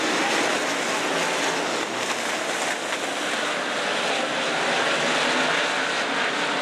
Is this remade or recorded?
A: recorded